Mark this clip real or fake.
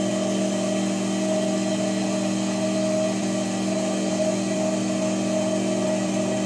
real